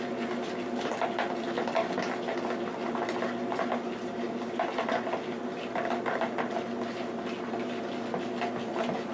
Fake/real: real